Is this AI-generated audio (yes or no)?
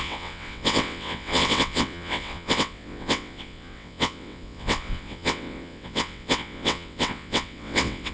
yes